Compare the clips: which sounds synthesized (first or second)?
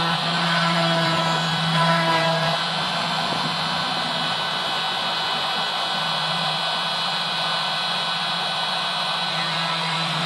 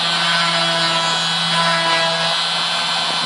first